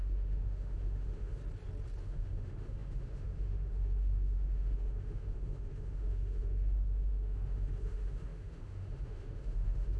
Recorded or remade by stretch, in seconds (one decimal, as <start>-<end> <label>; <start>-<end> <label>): 0.0-1.4 remade; 1.4-2.0 recorded; 2.0-10.0 remade

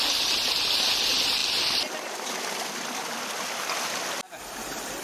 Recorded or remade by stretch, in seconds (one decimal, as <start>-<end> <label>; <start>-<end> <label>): 0.0-5.0 recorded

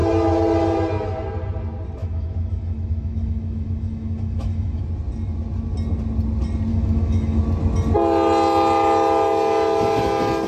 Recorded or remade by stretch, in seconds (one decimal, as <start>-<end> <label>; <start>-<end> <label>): 0.0-2.0 recorded; 2.0-4.8 remade; 4.8-6.7 recorded; 6.7-7.4 remade; 7.4-10.5 recorded

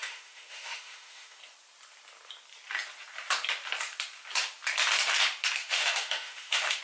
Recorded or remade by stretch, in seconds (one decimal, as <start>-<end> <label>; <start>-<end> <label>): 0.0-1.4 remade; 1.4-5.6 recorded; 5.6-6.8 remade

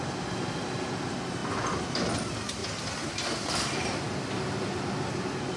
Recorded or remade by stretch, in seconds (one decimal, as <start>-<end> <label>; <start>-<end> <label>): 0.0-5.6 recorded

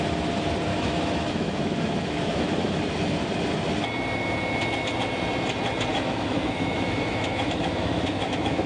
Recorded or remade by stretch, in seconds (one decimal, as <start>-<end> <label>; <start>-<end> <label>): 0.0-0.7 recorded; 0.7-2.8 remade; 2.8-5.9 recorded; 5.9-8.7 remade

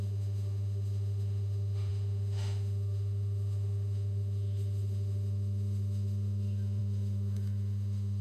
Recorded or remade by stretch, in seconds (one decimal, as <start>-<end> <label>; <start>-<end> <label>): 0.0-8.2 remade